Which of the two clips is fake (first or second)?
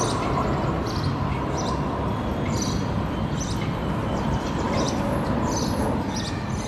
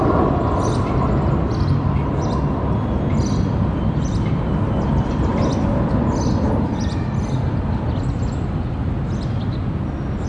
first